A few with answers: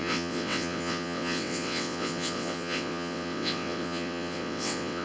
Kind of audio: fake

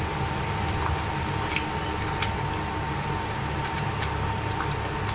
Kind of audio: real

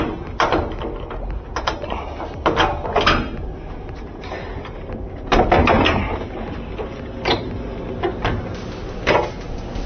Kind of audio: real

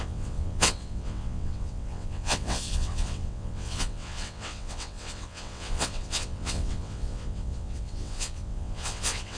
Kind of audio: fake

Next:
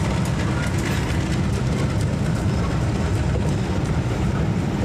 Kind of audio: fake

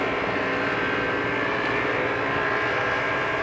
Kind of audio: real